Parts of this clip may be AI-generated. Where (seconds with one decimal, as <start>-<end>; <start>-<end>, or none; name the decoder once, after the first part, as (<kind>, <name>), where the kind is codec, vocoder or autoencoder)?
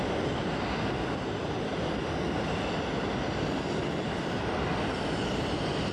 none